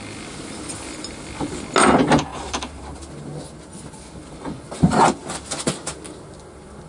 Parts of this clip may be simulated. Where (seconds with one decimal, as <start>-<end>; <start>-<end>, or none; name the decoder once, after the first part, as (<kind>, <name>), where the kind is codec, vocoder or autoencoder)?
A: 2.3-3.0 (vocoder, BigVGAN v2); 5.2-6.1